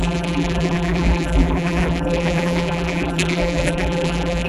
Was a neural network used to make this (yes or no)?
yes